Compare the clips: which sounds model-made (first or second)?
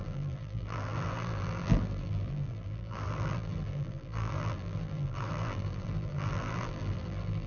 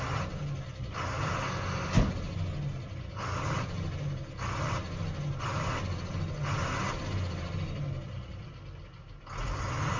first